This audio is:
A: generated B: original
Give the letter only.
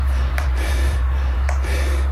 A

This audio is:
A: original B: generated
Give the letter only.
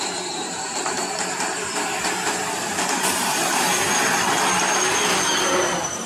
B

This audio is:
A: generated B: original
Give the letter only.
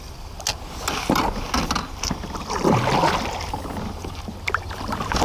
B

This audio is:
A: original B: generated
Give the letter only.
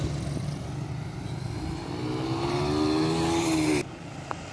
A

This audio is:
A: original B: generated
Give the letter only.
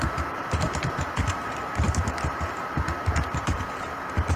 B